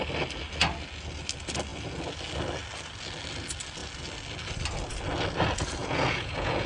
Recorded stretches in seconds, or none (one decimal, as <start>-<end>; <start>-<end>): 0.0-5.8